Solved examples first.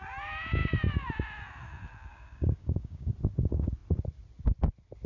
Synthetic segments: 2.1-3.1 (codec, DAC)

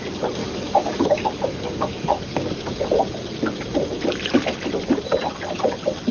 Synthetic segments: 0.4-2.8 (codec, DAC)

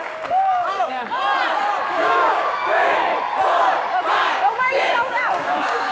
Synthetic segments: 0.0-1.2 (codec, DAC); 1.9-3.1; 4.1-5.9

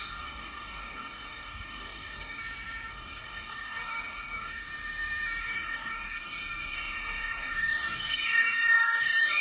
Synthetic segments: 0.0-2.4 (codec, DAC); 2.9-4.7; 5.4-9.4

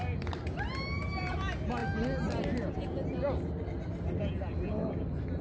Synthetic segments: none